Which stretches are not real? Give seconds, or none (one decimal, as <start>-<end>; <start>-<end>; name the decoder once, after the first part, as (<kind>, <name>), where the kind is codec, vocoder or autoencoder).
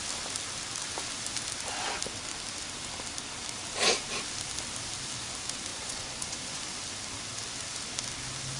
5.7-6.6 (vocoder, Vocos)